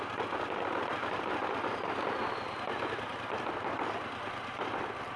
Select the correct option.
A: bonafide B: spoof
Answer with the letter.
A